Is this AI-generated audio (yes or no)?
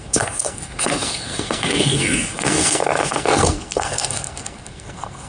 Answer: yes